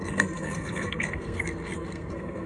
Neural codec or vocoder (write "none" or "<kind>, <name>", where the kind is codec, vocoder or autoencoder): codec, SNAC